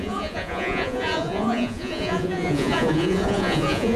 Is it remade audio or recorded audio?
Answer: remade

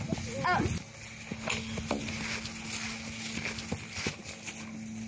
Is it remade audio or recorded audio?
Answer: recorded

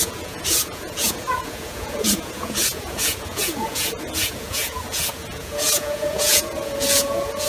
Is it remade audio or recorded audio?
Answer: remade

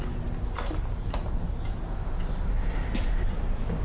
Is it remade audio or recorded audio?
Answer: recorded